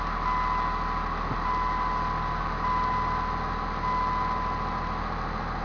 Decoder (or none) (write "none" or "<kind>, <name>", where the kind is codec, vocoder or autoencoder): none